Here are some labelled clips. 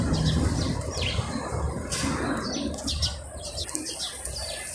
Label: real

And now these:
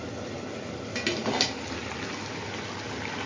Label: real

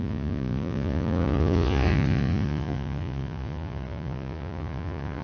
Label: fake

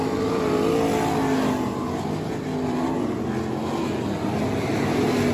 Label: real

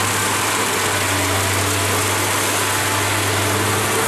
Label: real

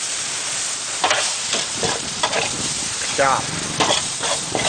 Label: fake